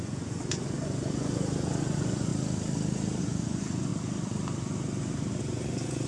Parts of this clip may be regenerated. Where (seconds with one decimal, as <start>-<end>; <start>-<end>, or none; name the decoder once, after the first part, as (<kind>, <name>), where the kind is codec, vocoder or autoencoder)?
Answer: 0.0-2.3 (vocoder, Vocos); 3.2-3.9; 5.4-6.1